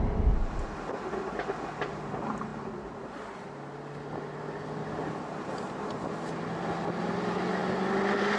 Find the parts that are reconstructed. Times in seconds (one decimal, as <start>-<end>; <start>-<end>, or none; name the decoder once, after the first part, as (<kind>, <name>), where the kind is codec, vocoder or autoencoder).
none

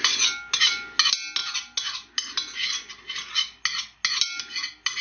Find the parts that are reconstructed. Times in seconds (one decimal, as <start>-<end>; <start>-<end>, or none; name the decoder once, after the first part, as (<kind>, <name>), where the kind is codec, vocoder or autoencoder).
none

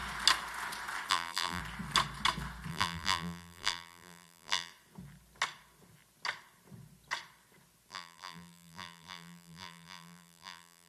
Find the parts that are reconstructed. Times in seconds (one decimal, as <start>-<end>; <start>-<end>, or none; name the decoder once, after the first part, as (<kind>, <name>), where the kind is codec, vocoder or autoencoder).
1.1-1.6 (vocoder, BigVGAN v2); 2.7-4.7; 7.9-10.9

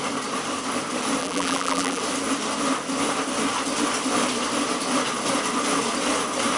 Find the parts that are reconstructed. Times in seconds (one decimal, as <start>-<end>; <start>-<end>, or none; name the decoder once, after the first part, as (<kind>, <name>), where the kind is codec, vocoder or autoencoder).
1.2-2.0 (vocoder, BigVGAN v2)

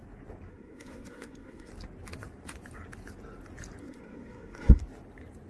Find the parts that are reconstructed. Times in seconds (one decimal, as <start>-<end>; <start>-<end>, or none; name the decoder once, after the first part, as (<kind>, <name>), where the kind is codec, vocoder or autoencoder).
0.5-1.7 (codec, SNAC); 3.8-4.8

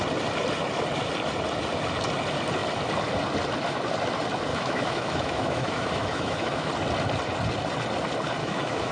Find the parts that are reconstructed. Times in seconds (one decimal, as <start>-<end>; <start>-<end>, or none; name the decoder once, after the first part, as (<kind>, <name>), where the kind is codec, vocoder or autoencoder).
4.5-6.7 (autoencoder, DAC-VAE); 8.4-8.9

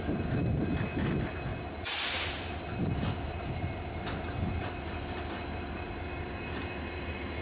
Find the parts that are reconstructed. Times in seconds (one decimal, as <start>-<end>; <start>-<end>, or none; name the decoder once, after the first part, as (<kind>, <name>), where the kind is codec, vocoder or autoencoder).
none

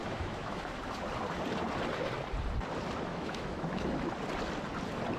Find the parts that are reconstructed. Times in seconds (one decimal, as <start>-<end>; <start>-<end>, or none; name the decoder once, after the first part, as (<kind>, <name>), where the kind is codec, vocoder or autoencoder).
0.0-0.8 (autoencoder, DAC-VAE); 3.1-4.1